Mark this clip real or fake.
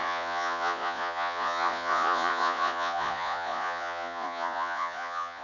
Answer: fake